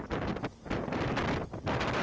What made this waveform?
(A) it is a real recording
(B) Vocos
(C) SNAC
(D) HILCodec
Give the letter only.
A